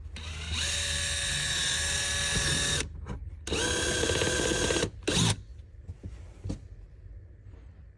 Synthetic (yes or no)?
no